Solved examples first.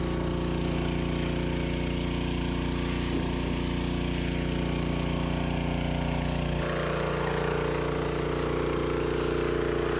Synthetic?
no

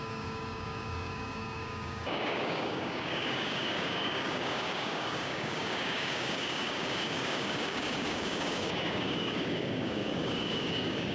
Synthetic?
yes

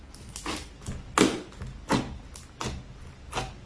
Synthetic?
no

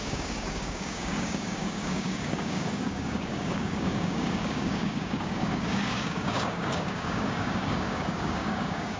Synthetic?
yes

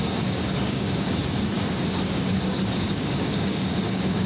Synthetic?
yes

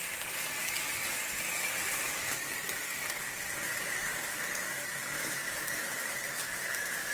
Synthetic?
yes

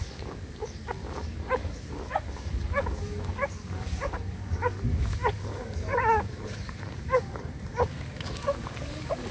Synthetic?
yes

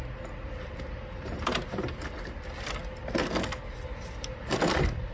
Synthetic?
no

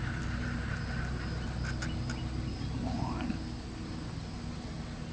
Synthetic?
no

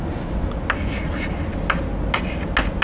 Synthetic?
no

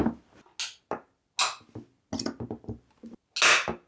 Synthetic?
no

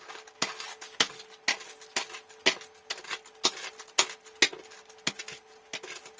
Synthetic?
no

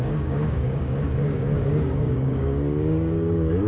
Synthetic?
yes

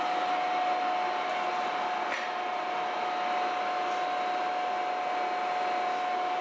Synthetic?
no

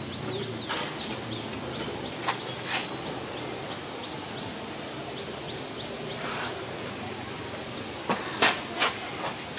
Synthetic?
no